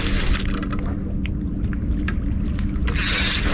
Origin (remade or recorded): recorded